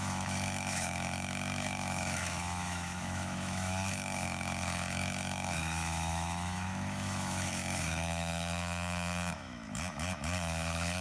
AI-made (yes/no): yes